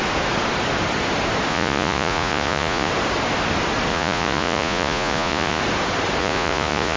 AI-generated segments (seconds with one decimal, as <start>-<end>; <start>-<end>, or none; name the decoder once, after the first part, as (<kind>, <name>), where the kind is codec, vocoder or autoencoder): 1.5-2.9 (vocoder, Vocos); 3.9-5.6; 6.2-7.0